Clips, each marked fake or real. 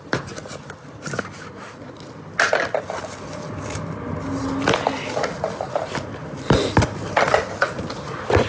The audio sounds real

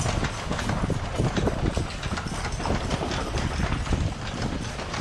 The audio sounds real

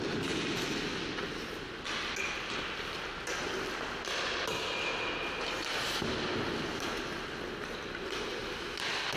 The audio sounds real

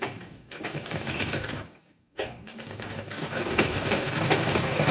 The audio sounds fake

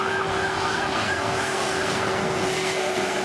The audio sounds fake